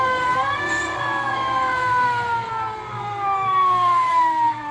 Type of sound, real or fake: fake